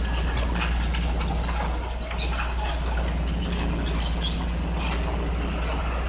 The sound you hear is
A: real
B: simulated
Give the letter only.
A